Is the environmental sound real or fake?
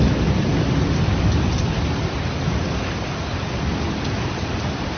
real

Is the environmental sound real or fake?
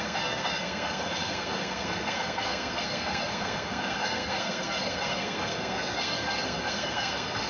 fake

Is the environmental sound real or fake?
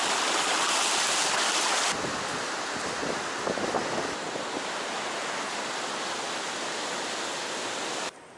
real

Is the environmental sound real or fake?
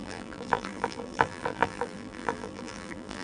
fake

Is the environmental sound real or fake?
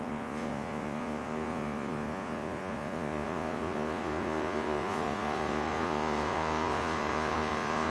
fake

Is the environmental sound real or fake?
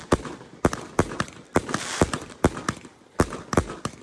real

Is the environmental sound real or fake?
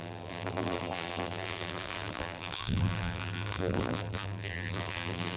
fake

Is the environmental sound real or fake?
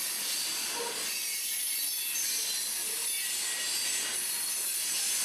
real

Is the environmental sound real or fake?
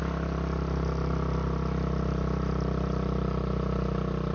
real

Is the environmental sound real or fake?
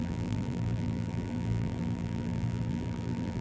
fake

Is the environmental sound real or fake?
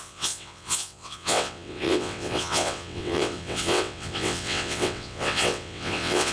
fake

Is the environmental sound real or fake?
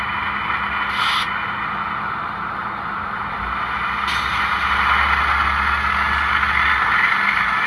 real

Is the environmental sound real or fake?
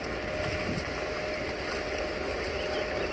real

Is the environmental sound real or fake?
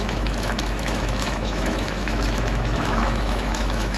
fake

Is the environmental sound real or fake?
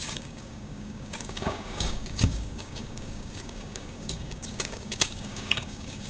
fake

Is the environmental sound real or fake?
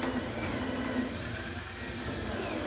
real